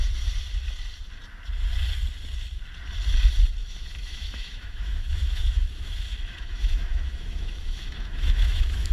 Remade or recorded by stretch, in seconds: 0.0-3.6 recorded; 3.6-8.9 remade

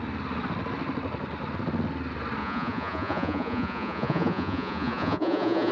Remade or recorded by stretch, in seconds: 0.0-2.4 recorded; 2.4-5.7 remade